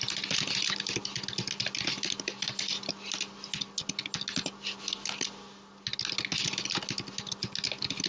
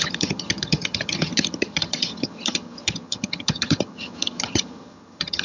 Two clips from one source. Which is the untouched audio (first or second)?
first